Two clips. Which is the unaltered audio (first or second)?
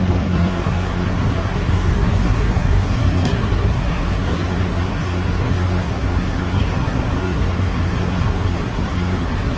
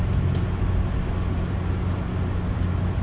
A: second